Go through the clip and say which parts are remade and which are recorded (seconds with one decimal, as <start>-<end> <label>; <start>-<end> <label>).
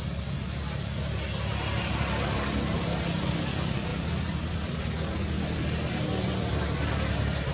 0.0-7.5 recorded